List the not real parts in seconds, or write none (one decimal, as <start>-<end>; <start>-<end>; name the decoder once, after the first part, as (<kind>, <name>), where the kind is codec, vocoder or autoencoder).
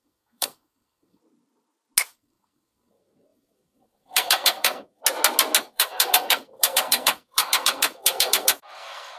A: 0.0-1.2 (codec, SNAC); 2.1-5.0; 5.6-9.2